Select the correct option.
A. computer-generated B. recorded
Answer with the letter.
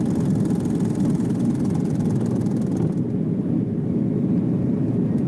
B